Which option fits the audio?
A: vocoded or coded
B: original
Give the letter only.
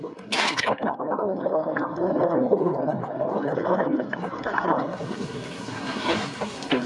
A